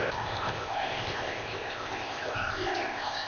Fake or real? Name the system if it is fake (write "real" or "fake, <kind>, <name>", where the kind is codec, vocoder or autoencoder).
fake, codec, ZipCodec